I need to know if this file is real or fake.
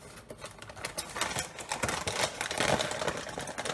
real